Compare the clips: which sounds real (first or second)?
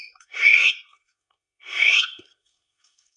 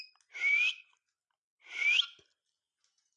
second